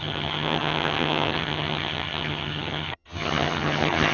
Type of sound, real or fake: fake